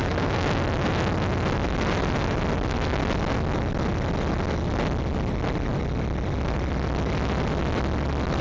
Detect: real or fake real